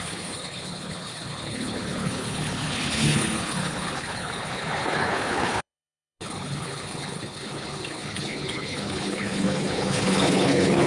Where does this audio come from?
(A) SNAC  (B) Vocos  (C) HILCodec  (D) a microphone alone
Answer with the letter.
C